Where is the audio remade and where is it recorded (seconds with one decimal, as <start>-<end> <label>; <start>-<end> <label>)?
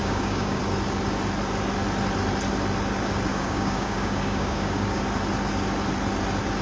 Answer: 0.0-0.6 remade; 0.6-3.3 recorded; 3.3-5.0 remade; 5.0-6.6 recorded